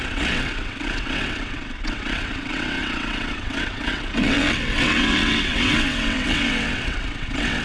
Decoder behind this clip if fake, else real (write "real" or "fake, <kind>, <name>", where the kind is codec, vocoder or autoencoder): fake, vocoder, WaveNeXt